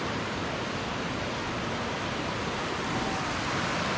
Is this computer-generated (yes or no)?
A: no